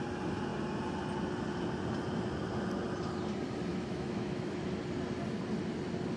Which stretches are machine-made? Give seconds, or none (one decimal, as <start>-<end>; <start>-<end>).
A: 3.7-4.7